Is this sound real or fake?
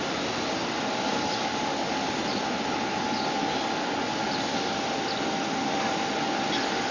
real